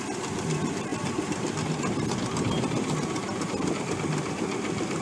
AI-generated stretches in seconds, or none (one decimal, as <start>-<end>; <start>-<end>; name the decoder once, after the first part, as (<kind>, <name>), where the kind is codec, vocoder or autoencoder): none